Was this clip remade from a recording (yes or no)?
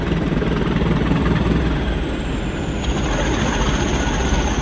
no